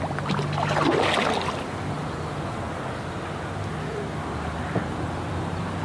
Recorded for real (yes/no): yes